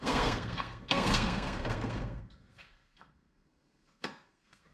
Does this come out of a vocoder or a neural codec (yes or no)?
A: yes